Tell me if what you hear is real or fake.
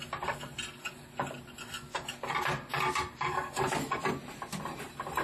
real